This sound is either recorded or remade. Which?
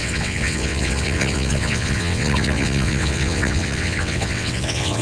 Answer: remade